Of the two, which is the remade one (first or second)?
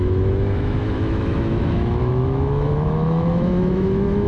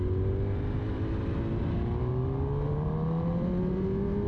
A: first